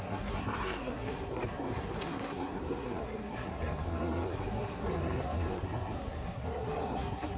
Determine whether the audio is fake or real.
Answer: fake